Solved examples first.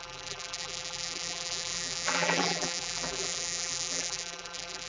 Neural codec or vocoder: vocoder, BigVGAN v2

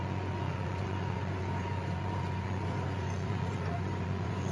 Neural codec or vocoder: vocoder, Vocos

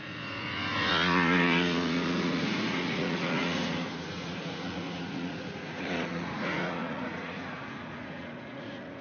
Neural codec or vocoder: vocoder, Vocos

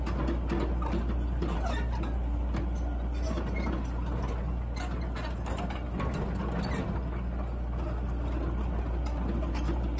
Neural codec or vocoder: none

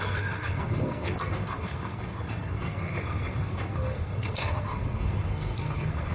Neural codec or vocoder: codec, SNAC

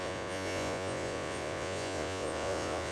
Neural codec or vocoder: vocoder, Vocos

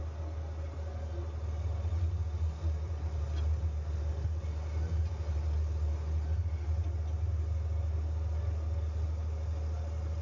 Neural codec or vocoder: none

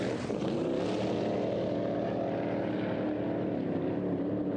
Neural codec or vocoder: none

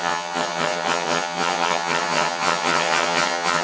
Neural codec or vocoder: vocoder, HiFi-GAN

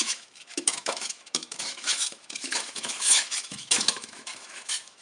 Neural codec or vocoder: autoencoder, DAC-VAE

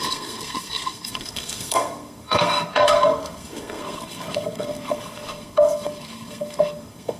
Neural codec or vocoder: codec, SNAC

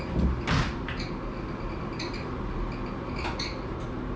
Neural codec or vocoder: none